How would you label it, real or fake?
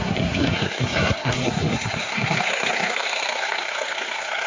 fake